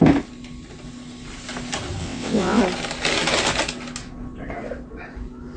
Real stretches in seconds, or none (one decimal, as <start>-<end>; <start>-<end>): 0.0-2.0; 2.6-5.6